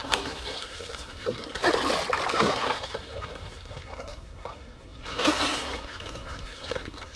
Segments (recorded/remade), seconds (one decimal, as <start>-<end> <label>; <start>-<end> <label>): 0.0-1.7 remade; 1.7-2.3 recorded; 2.3-7.2 remade